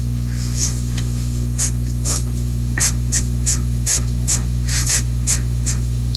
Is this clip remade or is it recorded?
remade